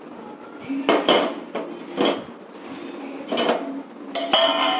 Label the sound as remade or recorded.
recorded